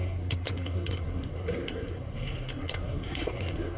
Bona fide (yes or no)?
no